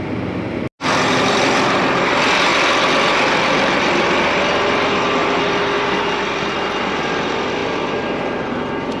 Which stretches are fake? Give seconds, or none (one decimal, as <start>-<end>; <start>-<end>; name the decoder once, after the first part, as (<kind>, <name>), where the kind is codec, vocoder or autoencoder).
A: 2.5-3.9 (vocoder, BigVGAN v2); 5.2-6.0